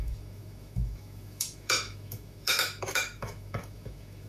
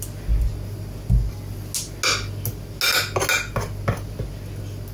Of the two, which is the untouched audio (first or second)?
second